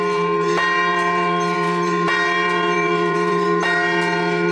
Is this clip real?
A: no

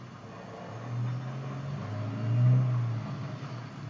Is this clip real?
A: yes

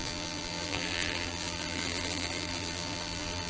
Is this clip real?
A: no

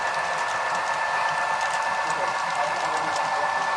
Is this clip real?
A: yes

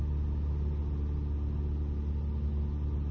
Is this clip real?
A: yes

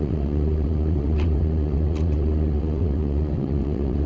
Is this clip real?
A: no